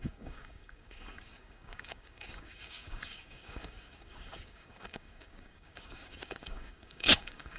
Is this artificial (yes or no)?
yes